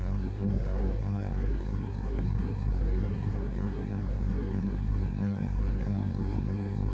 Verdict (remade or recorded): remade